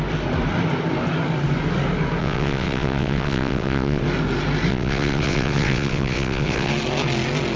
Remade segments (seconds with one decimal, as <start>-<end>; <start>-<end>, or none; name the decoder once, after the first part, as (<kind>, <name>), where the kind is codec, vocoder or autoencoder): 2.2-4.0 (vocoder, WaveNeXt); 4.7-6.7